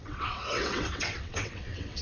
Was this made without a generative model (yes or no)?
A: no